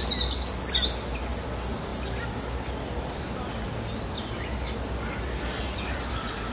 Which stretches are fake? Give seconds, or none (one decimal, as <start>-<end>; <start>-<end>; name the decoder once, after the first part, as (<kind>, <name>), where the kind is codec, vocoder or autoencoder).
none